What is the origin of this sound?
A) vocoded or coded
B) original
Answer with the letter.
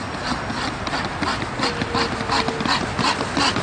B